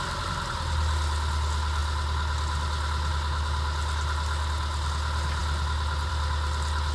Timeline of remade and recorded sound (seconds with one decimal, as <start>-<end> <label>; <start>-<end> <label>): 0.0-6.9 recorded